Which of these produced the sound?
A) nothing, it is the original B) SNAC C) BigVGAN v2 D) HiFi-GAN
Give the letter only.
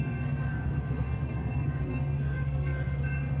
B